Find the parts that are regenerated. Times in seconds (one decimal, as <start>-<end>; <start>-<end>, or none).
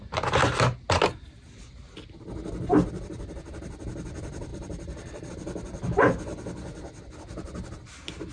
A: 4.5-5.3